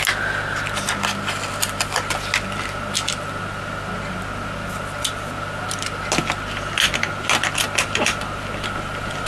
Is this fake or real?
real